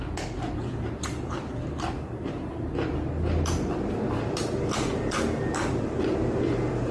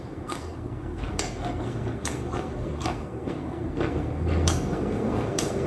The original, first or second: first